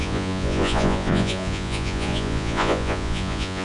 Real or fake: fake